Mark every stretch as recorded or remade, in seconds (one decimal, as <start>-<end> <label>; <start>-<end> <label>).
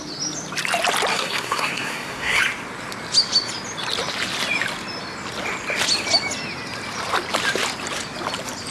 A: 0.0-1.1 recorded; 1.1-2.4 remade; 2.4-8.7 recorded